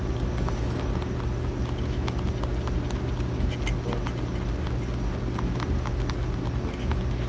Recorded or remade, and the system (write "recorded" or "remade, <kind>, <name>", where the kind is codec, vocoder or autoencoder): recorded